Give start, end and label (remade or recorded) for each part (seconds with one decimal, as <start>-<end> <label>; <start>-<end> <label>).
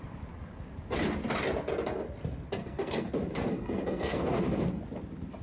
0.0-2.6 recorded; 2.6-3.1 remade; 3.1-3.5 recorded; 3.5-4.2 remade; 4.2-5.4 recorded